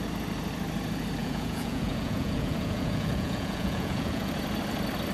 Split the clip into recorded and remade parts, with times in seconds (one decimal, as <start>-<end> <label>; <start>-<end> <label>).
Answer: 0.0-1.2 recorded; 1.2-4.3 remade; 4.3-5.1 recorded